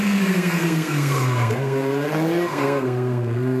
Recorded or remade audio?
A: remade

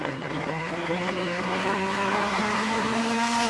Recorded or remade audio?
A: remade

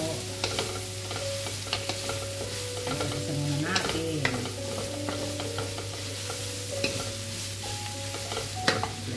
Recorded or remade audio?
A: recorded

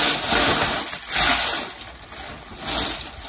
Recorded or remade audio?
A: recorded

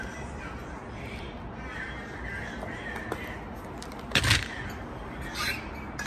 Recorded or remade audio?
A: recorded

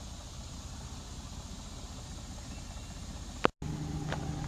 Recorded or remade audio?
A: recorded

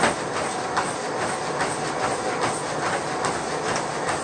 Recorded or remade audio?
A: recorded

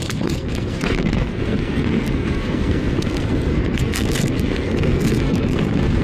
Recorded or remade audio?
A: remade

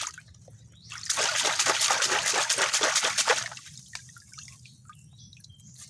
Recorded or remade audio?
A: recorded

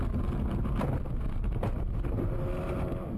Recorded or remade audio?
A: recorded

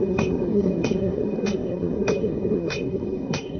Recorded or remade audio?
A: remade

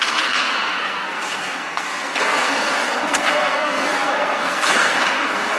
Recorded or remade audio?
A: remade